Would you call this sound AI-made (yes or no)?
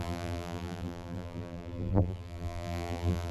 yes